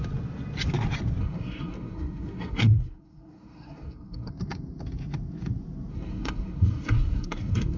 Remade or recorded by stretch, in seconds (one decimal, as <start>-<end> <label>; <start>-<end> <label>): 0.0-1.2 recorded; 1.2-4.3 remade; 4.3-5.9 recorded; 5.9-7.8 remade